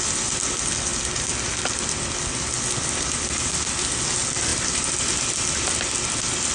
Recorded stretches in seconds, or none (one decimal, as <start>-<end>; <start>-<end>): 0.0-6.5